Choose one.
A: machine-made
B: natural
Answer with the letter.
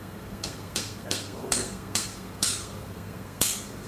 A